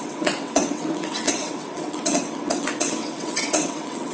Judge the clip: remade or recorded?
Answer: remade